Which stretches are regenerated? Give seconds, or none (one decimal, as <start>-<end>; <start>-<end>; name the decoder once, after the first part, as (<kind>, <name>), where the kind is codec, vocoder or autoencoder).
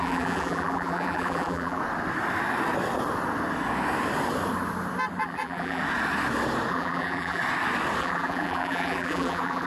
0.0-1.8 (vocoder, BigVGAN v2); 5.2-5.8; 6.7-7.4; 8.0-9.7